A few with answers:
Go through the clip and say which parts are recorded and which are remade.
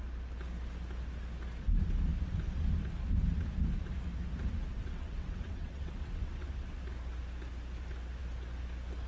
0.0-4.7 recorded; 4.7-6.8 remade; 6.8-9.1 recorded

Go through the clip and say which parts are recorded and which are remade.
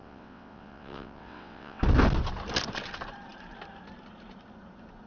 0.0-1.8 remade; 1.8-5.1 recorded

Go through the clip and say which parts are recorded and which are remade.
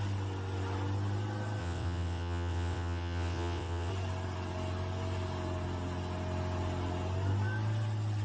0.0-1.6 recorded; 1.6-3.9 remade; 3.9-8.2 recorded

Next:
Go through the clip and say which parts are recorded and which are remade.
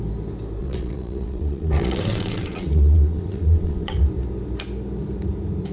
0.0-0.6 recorded; 0.6-4.0 remade; 4.0-5.7 recorded